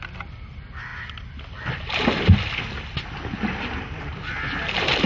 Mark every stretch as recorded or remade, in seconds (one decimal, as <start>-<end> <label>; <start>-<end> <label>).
0.0-5.1 recorded